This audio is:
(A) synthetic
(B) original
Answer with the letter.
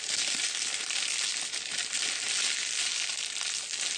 B